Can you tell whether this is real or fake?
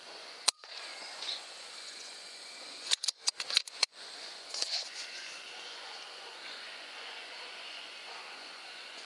fake